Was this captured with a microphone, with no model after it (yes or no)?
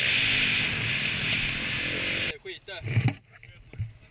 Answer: yes